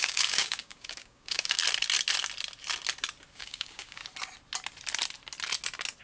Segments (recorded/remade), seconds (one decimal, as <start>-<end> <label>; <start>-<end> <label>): 0.0-1.6 remade; 1.6-3.3 recorded; 3.3-4.0 remade; 4.0-6.0 recorded